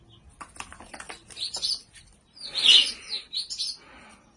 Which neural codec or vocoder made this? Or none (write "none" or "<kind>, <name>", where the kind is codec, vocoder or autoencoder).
none